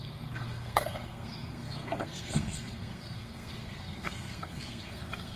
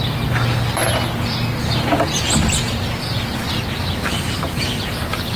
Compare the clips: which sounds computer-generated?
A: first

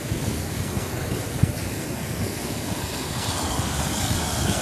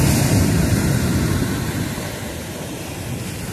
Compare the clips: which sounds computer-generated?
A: first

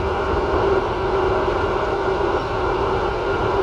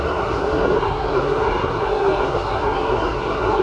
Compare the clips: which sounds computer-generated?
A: second